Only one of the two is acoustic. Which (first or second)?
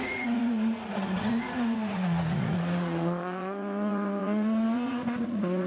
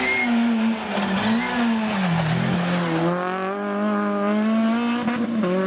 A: second